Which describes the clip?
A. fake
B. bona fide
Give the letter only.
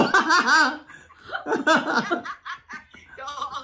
B